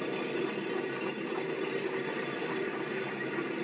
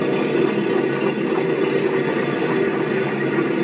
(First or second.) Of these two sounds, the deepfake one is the first